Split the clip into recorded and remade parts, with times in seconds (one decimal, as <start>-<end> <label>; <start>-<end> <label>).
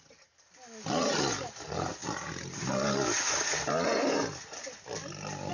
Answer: 0.0-5.5 recorded